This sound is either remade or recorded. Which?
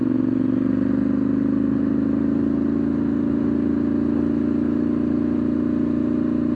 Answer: recorded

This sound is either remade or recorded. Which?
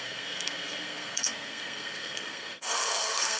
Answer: remade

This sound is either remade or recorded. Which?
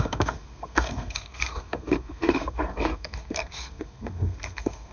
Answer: remade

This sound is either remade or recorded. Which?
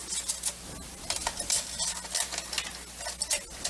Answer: recorded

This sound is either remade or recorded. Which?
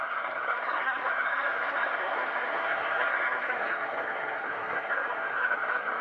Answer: remade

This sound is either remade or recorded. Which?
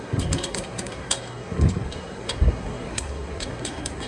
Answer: remade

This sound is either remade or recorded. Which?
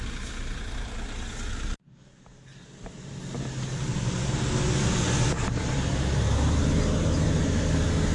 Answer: recorded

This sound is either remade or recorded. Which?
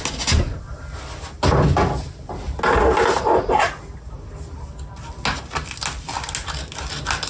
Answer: recorded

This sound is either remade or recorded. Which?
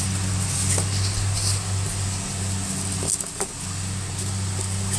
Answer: recorded